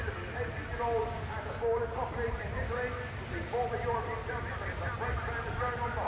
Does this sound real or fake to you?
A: real